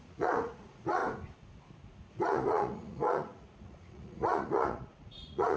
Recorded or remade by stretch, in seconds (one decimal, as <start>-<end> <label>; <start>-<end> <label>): 0.0-1.0 remade; 1.0-2.1 recorded; 2.1-5.6 remade

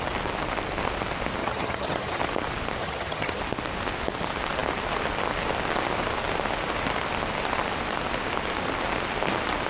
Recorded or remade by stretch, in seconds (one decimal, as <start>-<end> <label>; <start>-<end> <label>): 0.0-1.4 recorded; 1.4-2.2 remade; 2.2-2.8 recorded; 2.8-3.4 remade; 3.4-9.7 recorded

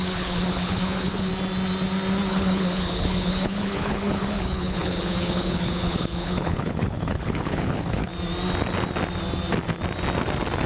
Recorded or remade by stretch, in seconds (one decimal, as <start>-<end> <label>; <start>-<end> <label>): 0.0-1.3 remade; 1.3-2.3 recorded; 2.3-8.1 remade; 8.1-10.7 recorded

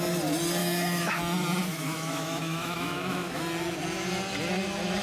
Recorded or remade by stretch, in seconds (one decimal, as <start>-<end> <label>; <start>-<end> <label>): 0.0-0.6 recorded; 0.6-1.2 remade; 1.2-1.7 recorded; 1.7-3.4 remade; 3.4-5.0 recorded

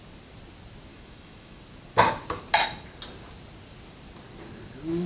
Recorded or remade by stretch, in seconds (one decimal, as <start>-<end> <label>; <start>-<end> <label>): 0.0-0.9 recorded; 0.9-1.6 remade; 1.6-5.1 recorded

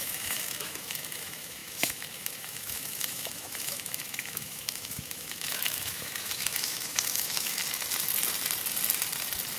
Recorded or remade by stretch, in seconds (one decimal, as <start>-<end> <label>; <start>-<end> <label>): 0.0-7.6 remade; 7.6-9.6 recorded